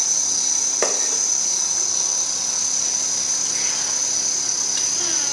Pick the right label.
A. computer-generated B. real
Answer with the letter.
B